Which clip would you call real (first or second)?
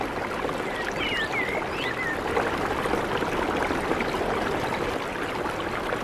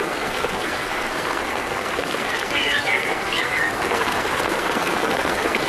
first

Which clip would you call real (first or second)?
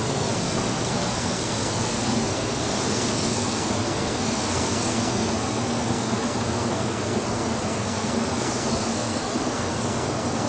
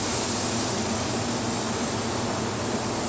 second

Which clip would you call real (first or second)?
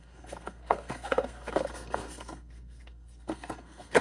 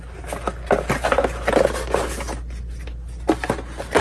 second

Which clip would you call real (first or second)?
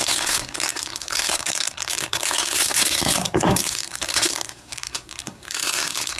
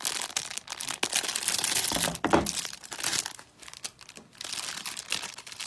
second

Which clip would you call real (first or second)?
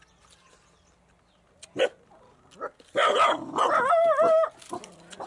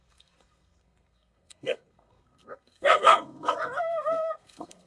first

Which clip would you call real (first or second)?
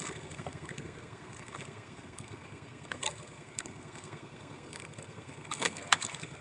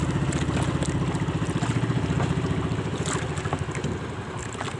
second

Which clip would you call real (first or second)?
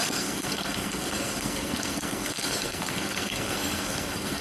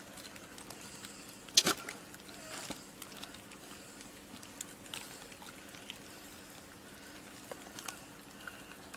second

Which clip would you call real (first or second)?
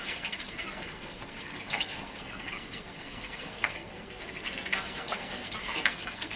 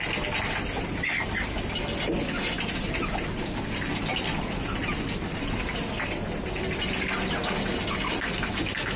second